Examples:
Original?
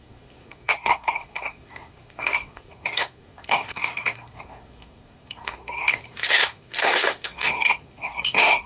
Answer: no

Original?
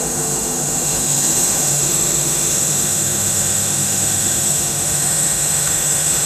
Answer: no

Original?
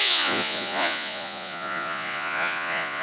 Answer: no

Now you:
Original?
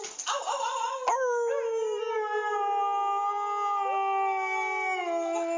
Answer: yes